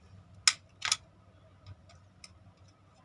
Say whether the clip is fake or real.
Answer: real